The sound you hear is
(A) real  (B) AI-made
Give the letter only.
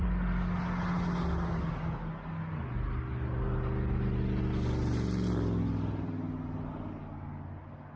A